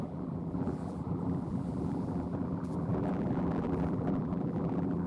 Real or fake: fake